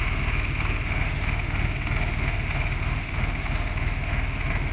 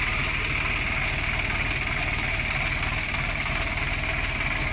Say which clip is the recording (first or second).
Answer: second